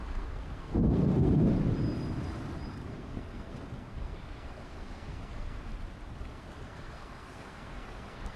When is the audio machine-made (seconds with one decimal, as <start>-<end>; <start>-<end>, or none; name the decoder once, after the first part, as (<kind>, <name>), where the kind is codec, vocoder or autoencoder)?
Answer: 0.0-1.5 (codec, SNAC); 2.7-5.7; 6.2-8.4